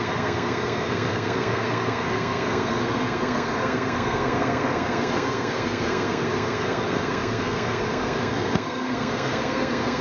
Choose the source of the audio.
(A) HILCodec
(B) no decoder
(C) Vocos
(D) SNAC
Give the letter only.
D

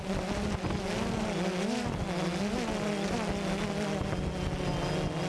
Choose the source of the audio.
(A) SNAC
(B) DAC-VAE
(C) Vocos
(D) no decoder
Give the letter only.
D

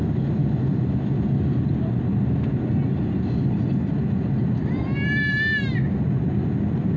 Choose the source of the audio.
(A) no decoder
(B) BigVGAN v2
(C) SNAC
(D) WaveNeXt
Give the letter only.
A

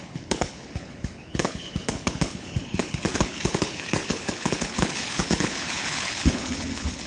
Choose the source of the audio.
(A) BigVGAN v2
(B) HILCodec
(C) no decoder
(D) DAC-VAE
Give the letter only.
B